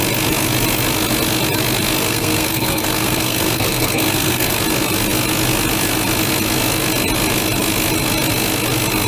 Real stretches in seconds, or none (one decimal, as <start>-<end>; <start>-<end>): 0.0-2.0; 4.6-9.1